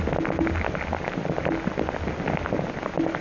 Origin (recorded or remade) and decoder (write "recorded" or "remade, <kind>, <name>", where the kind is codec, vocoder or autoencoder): recorded